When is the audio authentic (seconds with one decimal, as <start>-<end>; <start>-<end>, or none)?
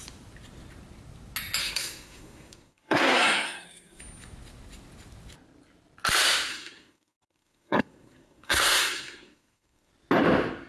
0.0-1.6; 4.0-6.5; 9.9-10.7